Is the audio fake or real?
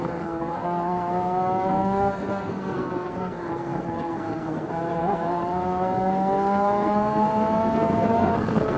fake